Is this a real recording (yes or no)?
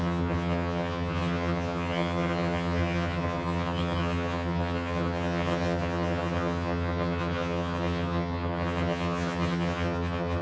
no